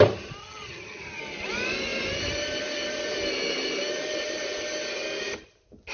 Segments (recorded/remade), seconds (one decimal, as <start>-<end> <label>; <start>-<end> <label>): 0.0-0.4 recorded; 0.4-1.2 remade; 1.2-5.9 recorded